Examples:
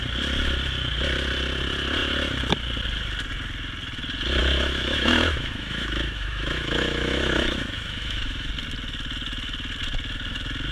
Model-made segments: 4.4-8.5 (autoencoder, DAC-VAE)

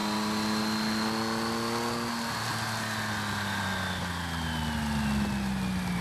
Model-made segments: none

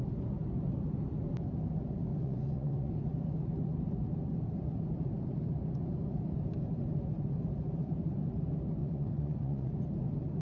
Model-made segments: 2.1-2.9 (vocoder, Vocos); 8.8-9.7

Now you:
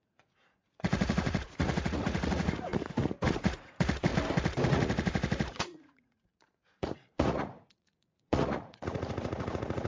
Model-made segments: 0.0-4.1 (vocoder, Vocos); 4.7-9.9

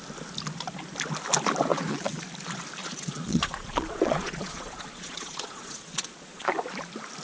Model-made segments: 1.7-2.2 (vocoder, Vocos); 2.8-6.5

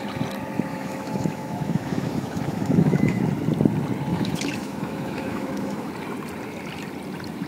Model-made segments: 0.7-3.2 (autoencoder, DAC-VAE); 4.1-5.9

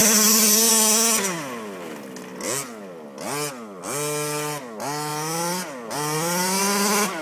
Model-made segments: 0.0-0.7 (vocoder, BigVGAN v2); 5.1-6.6